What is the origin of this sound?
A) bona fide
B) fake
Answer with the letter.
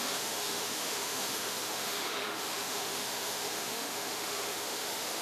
B